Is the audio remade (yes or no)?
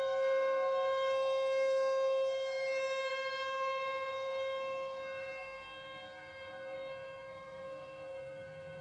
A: yes